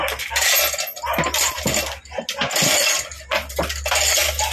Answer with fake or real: real